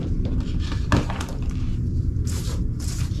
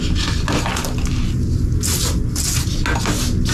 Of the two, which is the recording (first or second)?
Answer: second